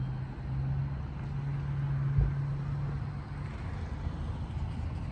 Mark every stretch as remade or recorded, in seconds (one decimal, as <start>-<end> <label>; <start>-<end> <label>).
0.0-5.1 recorded